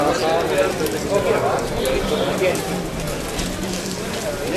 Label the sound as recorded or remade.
recorded